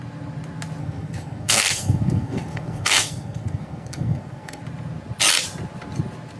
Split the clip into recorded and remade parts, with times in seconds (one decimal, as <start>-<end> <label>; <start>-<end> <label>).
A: 0.0-0.8 recorded; 0.8-4.6 remade; 4.6-6.4 recorded